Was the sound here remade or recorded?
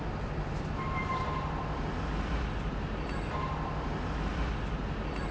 recorded